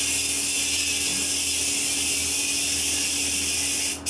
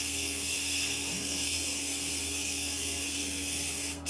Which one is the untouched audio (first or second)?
first